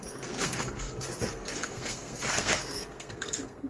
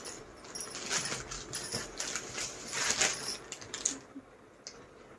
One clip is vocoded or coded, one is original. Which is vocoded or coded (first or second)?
first